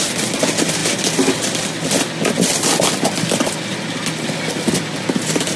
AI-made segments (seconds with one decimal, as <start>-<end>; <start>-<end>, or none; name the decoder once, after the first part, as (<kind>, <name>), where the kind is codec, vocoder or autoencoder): none